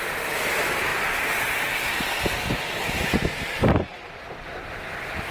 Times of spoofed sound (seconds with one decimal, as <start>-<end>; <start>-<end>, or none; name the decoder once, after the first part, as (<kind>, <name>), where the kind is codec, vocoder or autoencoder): none